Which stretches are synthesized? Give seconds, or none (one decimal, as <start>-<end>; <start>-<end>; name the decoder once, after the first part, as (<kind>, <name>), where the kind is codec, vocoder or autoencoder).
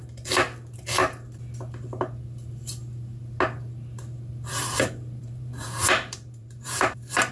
4.6-7.3 (vocoder, BigVGAN v2)